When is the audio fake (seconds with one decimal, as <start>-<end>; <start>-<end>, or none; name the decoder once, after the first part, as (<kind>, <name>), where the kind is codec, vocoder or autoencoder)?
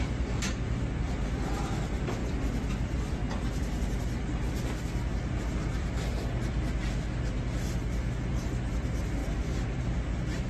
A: 0.0-2.2 (vocoder, BigVGAN v2); 2.7-3.2; 8.3-10.5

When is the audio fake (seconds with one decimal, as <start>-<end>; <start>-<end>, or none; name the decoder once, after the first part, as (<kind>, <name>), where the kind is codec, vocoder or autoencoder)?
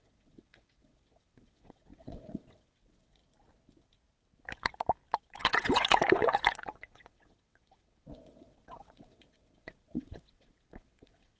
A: 0.0-3.2 (vocoder, WaveNeXt); 5.2-11.4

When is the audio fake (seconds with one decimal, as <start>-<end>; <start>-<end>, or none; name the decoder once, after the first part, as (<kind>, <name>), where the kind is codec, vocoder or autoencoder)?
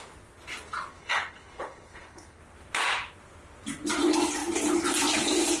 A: 0.9-2.4 (codec, HILCodec)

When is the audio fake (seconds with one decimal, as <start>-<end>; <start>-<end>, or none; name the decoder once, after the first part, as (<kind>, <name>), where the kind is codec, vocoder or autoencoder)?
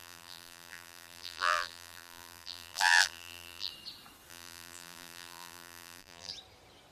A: 0.0-3.7 (vocoder, BigVGAN v2); 4.3-6.3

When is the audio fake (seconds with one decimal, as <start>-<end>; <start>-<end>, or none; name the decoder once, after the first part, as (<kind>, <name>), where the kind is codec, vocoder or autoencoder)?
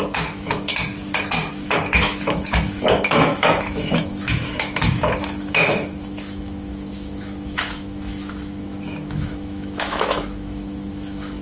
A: 0.0-0.7 (autoencoder, DAC-VAE); 1.5-11.4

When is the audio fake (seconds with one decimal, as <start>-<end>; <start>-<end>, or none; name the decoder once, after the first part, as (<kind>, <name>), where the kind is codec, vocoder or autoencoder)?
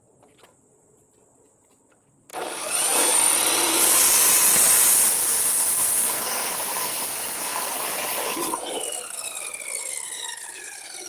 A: 5.1-7.8 (codec, SNAC)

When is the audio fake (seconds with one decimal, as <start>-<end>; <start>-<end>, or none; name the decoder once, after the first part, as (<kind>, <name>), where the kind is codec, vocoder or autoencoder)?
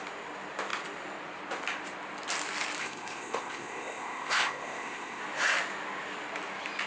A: 2.8-5.2 (codec, ZipCodec)